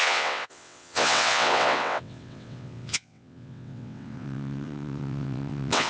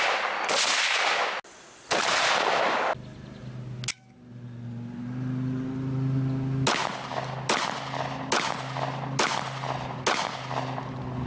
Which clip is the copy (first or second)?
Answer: first